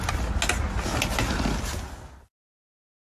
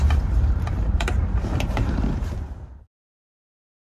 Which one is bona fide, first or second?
first